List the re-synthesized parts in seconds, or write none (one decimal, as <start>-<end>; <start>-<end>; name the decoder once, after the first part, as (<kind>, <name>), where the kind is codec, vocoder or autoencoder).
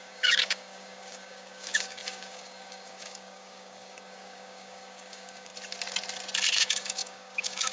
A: 0.0-5.5 (codec, DAC); 6.5-7.7